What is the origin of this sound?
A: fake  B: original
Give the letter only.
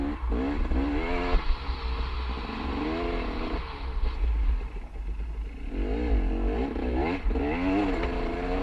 B